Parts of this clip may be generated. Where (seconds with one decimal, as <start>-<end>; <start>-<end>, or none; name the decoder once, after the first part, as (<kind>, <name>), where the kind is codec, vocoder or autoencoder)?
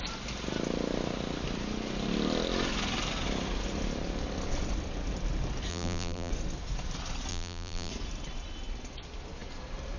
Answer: 5.7-6.3 (vocoder, BigVGAN v2); 7.3-7.9